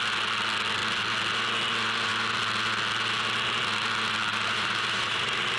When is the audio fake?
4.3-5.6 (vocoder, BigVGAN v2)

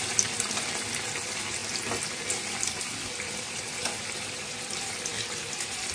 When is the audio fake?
none

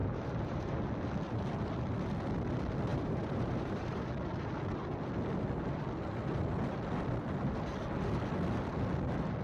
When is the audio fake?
0.0-0.8 (vocoder, BigVGAN v2); 2.9-4.1

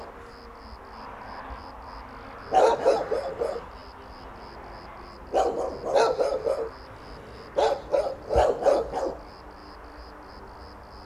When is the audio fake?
7.9-8.5 (vocoder, BigVGAN v2); 9.6-10.3

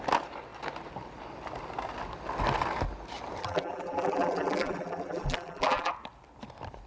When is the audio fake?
3.4-5.9 (vocoder, BigVGAN v2)

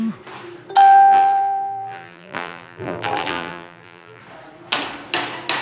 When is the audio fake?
0.8-4.2 (vocoder, BigVGAN v2)

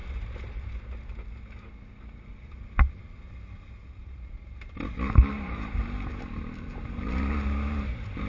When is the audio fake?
4.0-8.3 (vocoder, BigVGAN v2)